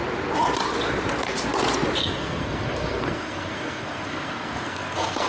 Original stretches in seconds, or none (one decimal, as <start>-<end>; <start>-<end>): 0.0-2.0